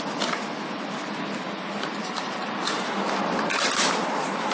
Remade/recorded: recorded